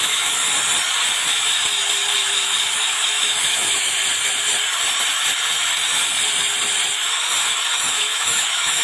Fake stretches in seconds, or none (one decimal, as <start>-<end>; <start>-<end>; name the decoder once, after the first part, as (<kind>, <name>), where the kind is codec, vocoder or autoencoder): 0.0-0.4 (autoencoder, DAC-VAE); 2.3-4.0; 7.9-8.8